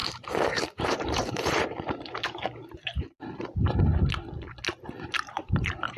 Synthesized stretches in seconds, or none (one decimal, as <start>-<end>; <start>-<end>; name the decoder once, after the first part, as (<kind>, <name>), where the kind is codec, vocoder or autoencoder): 0.0-3.9 (vocoder, BigVGAN v2); 5.1-6.0